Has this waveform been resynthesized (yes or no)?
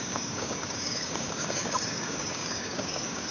yes